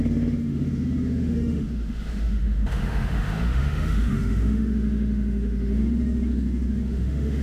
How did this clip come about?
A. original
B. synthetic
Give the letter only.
B